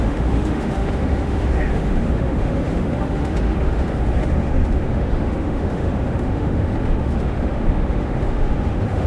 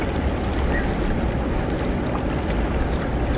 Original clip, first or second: second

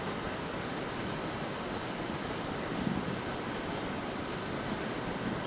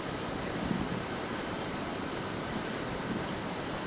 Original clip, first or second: first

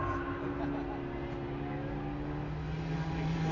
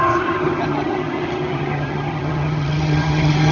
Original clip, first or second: first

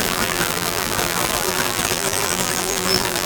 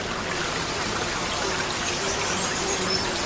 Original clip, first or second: second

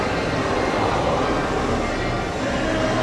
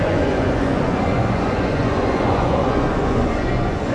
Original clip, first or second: first